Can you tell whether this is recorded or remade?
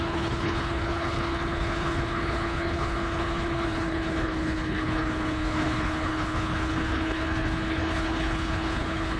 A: remade